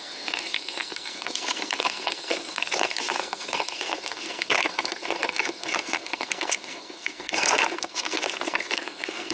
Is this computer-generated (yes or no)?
yes